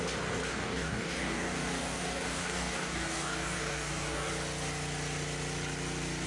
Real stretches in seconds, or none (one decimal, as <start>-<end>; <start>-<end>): 0.0-0.5; 4.3-6.3

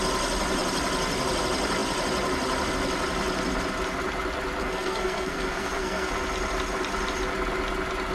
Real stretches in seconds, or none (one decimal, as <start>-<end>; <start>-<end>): 0.0-4.6; 6.1-8.1